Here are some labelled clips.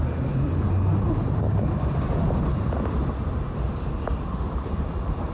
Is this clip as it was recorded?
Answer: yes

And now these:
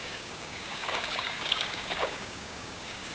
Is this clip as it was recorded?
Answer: no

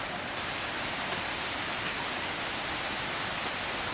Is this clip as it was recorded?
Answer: yes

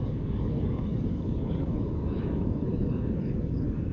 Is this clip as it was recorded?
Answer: no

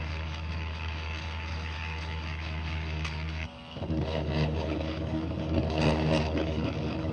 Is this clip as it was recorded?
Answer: no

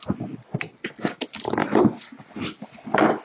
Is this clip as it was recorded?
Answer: yes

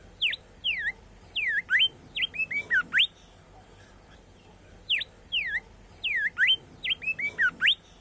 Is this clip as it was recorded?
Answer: yes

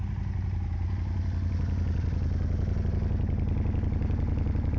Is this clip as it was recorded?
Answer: yes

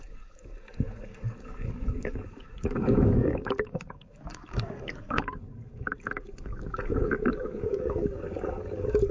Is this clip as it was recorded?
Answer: no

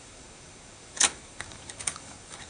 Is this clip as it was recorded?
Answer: no